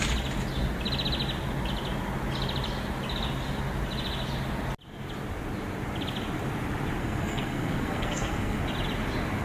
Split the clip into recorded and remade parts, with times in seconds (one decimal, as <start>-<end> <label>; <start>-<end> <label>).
0.0-7.0 recorded; 7.0-8.6 remade; 8.6-9.4 recorded